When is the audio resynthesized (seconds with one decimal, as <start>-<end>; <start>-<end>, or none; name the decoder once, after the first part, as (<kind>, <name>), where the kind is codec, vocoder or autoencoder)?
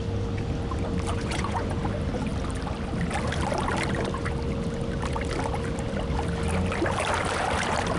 1.1-1.8 (vocoder, Vocos)